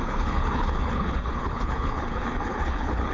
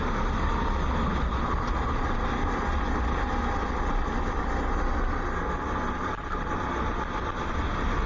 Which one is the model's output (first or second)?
first